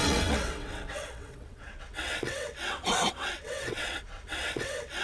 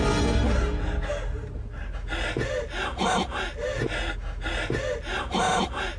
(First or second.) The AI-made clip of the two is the first